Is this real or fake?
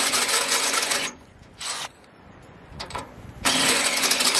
fake